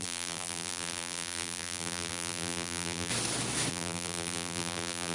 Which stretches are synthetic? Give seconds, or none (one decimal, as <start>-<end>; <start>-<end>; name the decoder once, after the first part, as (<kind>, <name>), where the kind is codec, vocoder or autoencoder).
0.0-3.1 (vocoder, BigVGAN v2); 3.7-5.1